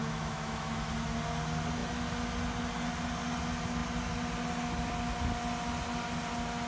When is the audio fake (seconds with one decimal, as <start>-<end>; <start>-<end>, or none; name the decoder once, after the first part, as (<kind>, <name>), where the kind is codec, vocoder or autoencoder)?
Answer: 0.0-0.9 (autoencoder, DAC-VAE)